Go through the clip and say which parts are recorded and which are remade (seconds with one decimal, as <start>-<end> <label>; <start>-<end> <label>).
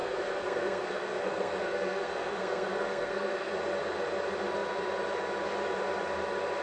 0.0-3.5 remade; 3.5-6.6 recorded